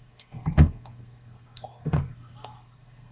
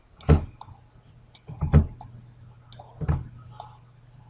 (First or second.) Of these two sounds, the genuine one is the second